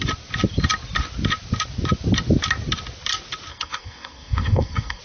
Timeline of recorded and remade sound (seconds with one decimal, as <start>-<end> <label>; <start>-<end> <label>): 0.0-3.5 recorded; 3.5-5.0 remade